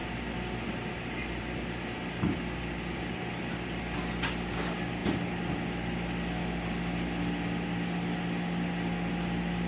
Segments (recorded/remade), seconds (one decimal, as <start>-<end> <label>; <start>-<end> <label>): 0.0-9.7 recorded